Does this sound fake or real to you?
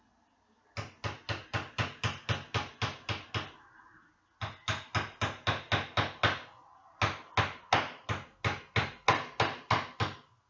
real